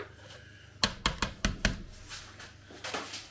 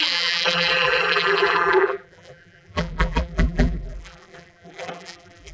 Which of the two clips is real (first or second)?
first